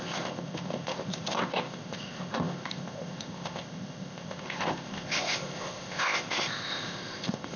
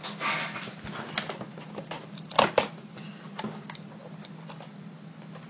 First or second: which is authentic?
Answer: second